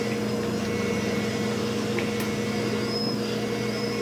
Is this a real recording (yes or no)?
yes